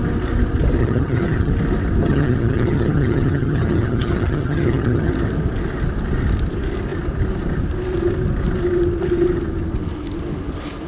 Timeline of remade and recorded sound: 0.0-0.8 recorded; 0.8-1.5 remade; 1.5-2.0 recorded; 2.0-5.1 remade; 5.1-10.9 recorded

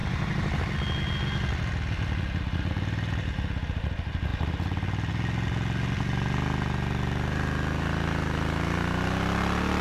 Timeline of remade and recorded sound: 0.0-0.7 remade; 0.7-9.8 recorded

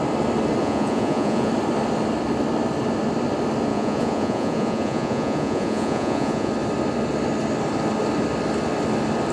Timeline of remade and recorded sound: 0.0-0.6 recorded; 0.6-1.5 remade; 1.5-3.7 recorded; 3.7-6.5 remade; 6.5-9.3 recorded

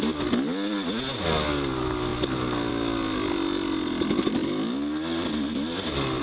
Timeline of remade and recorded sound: 0.0-6.2 recorded

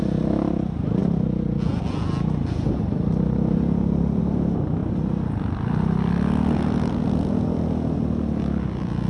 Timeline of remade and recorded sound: 0.0-9.1 recorded

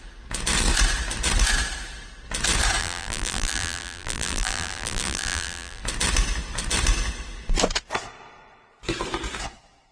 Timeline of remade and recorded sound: 0.0-2.8 recorded; 2.8-5.8 remade; 5.8-9.9 recorded